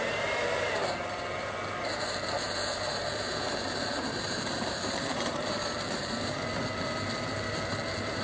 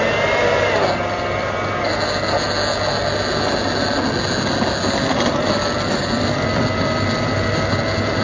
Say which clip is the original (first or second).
second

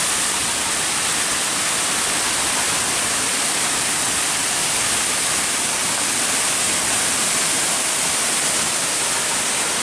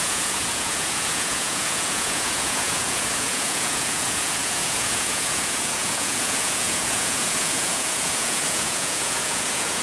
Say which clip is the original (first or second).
first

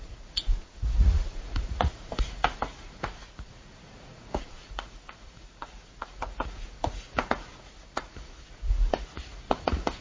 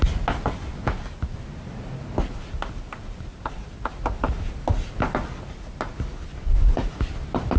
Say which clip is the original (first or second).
second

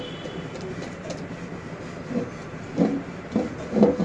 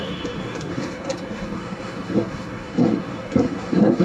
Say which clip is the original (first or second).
first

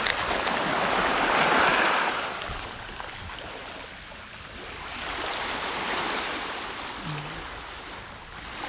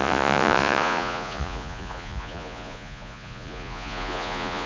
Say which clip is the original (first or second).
first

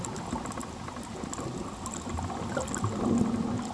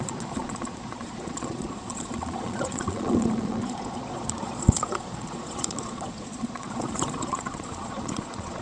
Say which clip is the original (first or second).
first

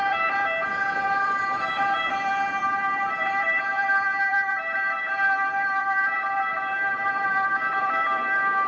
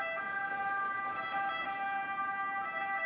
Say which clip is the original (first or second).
second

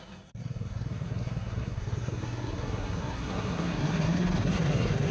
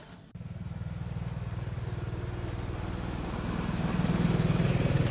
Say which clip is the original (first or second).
second